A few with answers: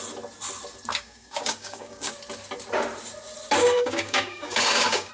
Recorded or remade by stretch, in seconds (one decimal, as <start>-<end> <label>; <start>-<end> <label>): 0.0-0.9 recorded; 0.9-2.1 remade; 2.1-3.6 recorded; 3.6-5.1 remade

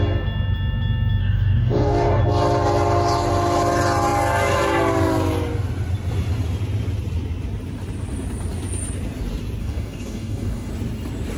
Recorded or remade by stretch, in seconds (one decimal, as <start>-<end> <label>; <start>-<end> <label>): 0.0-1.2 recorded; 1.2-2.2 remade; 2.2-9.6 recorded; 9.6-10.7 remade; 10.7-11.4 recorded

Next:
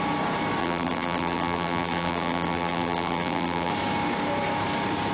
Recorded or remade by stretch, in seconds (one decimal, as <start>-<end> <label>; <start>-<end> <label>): 0.0-0.6 recorded; 0.6-3.7 remade; 3.7-5.1 recorded